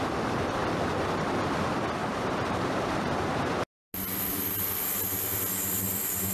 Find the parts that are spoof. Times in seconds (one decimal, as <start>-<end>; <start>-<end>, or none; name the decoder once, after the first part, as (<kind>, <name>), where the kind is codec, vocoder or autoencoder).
2.0-3.5 (vocoder, BigVGAN v2)